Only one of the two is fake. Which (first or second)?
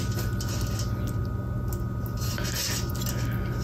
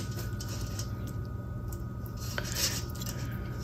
second